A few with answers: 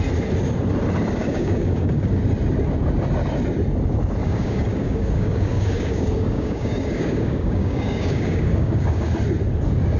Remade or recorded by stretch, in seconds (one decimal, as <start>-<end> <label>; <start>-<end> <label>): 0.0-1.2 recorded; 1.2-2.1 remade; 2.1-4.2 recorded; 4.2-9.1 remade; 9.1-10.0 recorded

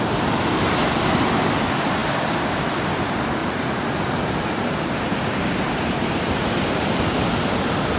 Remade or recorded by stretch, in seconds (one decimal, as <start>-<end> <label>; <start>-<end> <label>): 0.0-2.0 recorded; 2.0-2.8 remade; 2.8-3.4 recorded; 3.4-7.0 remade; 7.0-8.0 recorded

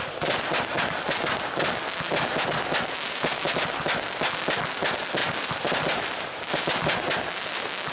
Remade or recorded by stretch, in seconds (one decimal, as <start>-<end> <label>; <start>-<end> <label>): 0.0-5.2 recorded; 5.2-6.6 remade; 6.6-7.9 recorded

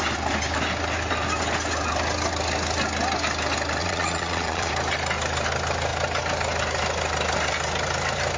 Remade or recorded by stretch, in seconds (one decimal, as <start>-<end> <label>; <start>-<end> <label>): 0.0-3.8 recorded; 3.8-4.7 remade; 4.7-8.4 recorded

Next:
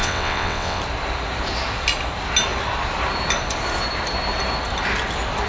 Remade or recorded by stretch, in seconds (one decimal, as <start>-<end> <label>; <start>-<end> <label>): 0.0-0.8 remade; 0.8-5.5 recorded